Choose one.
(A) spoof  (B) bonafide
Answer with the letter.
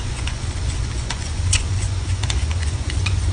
A